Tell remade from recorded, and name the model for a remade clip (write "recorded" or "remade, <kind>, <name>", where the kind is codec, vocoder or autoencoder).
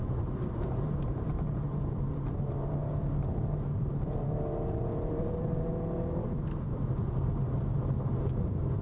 remade, vocoder, BigVGAN v2